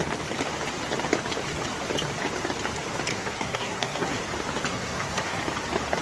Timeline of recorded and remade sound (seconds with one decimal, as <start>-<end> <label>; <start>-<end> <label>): 0.0-3.1 recorded; 3.1-4.2 remade; 4.2-4.7 recorded; 4.7-5.4 remade; 5.4-6.0 recorded